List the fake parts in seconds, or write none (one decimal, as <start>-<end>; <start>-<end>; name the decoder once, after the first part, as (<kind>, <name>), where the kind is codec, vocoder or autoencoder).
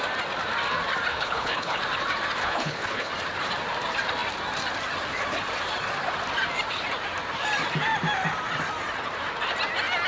1.1-1.8 (codec, HILCodec); 2.4-3.1